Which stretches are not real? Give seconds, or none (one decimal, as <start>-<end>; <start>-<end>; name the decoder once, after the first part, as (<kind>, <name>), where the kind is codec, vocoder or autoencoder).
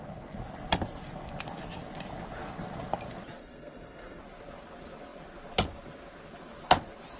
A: 3.4-4.2 (codec, SNAC)